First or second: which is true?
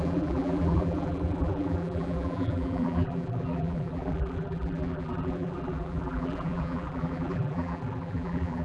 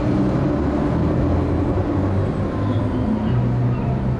second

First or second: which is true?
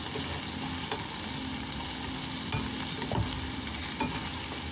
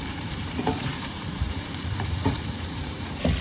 first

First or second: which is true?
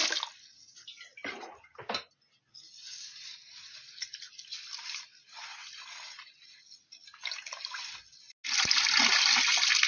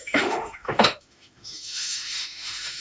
first